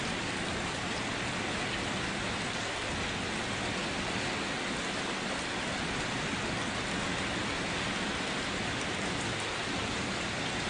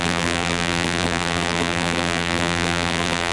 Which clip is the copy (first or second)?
second